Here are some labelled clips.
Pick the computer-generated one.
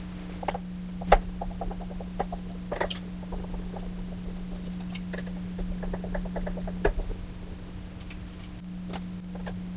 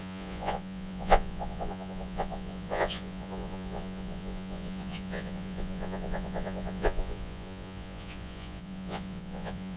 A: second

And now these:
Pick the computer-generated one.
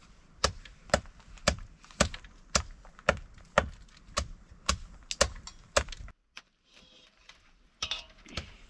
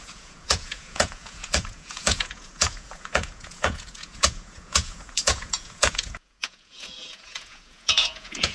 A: second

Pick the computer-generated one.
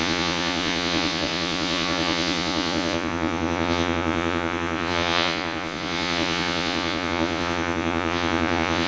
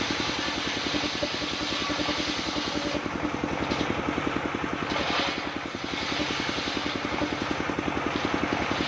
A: first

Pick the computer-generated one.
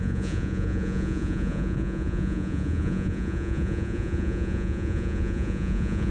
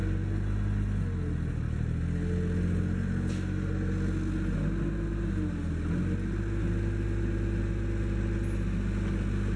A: first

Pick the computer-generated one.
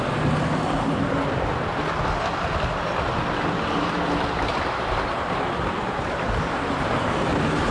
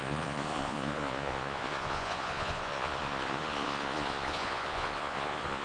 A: second